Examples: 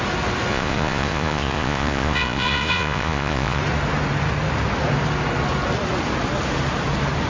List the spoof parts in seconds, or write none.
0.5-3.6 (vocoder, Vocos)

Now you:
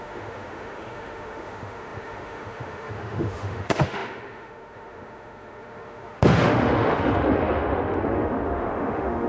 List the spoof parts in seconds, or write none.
0.0-9.3 (autoencoder, DAC-VAE)

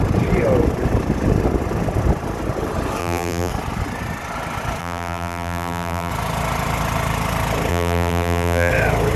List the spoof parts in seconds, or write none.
3.0-3.5 (vocoder, BigVGAN v2); 4.8-6.1; 7.7-8.7

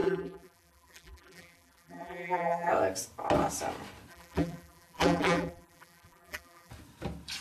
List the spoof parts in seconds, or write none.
0.0-2.7 (vocoder, BigVGAN v2); 4.1-6.7